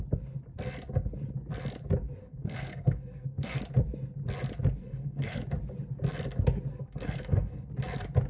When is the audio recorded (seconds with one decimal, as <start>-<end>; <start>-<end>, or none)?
0.0-2.2; 3.6-4.8; 5.4-6.7; 7.7-8.3